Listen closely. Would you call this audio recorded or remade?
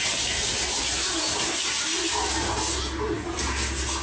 recorded